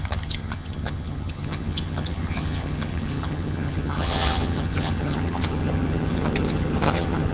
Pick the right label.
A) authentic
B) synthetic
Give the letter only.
B